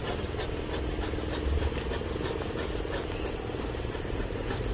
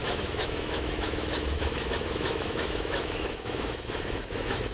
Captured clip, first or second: first